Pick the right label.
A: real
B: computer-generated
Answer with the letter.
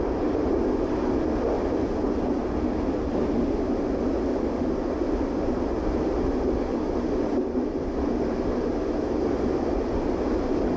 A